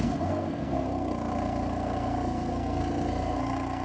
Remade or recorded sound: remade